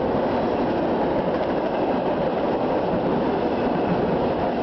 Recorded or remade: recorded